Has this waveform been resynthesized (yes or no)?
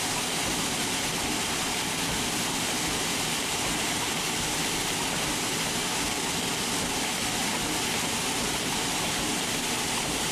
no